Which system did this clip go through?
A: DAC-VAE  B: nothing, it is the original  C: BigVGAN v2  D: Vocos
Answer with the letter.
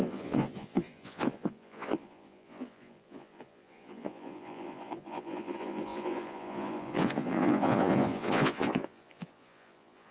D